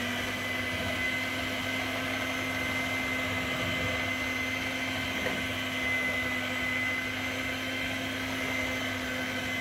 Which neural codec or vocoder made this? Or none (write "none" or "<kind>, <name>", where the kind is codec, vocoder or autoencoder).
none